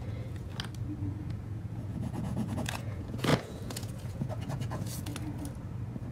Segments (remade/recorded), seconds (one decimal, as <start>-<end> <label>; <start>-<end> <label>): 0.0-0.5 remade; 0.5-1.0 recorded; 1.0-5.1 remade; 5.1-6.1 recorded